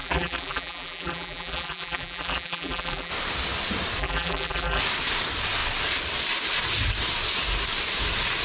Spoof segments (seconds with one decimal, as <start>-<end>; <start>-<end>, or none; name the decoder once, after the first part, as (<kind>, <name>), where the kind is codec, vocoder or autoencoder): 0.0-3.1 (vocoder, BigVGAN v2); 4.0-4.8